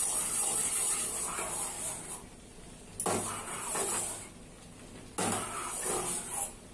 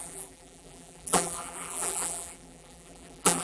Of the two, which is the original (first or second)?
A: first